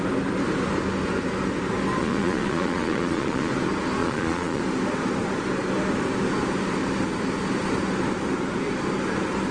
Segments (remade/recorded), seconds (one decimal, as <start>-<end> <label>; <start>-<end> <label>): 0.0-2.0 recorded; 2.0-3.5 remade; 3.5-4.0 recorded; 4.0-4.6 remade; 4.6-9.5 recorded